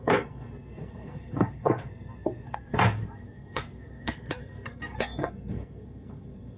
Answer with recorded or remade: remade